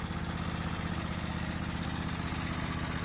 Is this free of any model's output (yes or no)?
yes